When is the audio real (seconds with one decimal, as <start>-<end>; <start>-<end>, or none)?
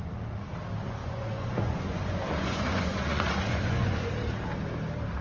0.0-1.0; 4.1-5.2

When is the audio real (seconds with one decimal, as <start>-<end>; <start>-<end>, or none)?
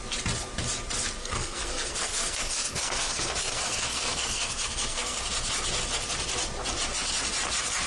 0.0-1.2; 5.2-7.9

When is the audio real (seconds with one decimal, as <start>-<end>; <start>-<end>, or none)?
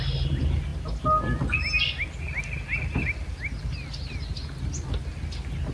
0.0-5.7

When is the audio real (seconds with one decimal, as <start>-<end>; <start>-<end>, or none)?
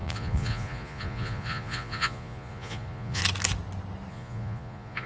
3.2-4.1